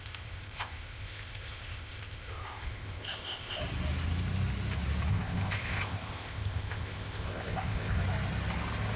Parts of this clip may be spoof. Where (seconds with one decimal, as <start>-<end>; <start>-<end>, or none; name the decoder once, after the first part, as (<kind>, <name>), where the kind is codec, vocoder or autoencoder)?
0.0-3.6 (codec, ZipCodec); 5.1-8.0